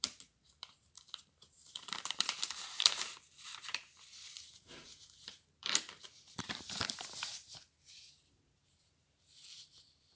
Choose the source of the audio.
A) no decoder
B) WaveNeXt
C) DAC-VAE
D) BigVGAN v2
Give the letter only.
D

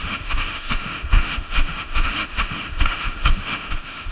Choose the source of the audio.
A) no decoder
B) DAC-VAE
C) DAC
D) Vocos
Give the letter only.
B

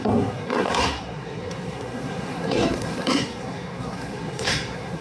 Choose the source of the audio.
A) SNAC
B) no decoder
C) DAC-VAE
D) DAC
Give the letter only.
A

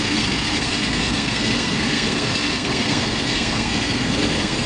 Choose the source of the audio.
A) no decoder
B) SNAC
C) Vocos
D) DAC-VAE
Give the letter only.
B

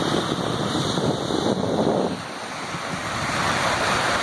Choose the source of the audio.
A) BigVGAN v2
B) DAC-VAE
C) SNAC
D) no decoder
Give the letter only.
D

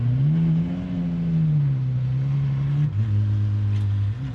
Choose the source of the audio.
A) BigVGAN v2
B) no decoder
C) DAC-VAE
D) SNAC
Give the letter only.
B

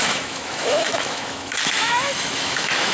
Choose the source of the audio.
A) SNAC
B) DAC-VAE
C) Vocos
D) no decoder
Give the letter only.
B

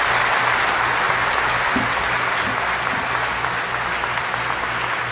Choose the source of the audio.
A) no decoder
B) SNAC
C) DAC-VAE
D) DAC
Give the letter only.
A